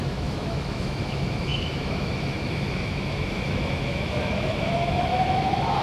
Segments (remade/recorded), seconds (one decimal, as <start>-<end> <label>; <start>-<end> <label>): 0.0-5.8 remade